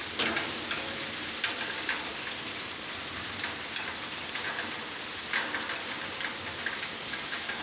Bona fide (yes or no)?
yes